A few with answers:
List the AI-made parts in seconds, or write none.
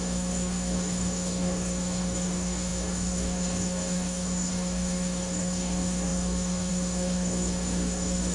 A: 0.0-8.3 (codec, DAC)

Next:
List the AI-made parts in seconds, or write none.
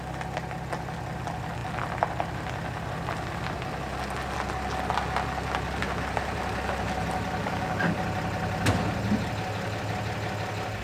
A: 7.4-8.0 (codec, DAC)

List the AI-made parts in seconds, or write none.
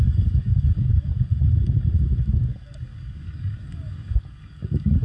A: 0.0-1.1 (codec, DAC); 2.2-5.0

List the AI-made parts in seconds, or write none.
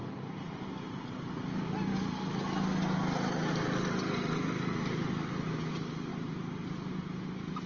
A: none